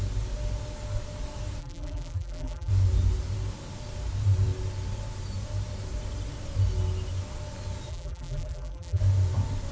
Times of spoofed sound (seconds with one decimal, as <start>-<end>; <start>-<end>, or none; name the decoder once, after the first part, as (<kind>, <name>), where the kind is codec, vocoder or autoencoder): 1.6-2.7 (vocoder, BigVGAN v2); 7.9-9.0